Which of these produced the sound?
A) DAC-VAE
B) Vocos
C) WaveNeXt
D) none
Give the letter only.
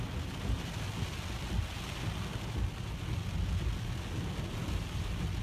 D